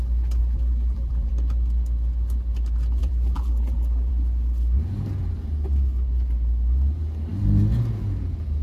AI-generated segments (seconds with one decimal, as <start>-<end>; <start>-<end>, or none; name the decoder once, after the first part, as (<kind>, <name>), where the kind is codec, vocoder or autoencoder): 0.4-1.3 (vocoder, BigVGAN v2); 3.0-4.1